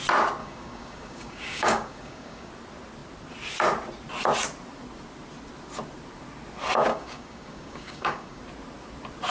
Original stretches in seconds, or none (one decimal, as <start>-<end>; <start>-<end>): 0.0-0.4; 2.5-6.9; 8.4-9.3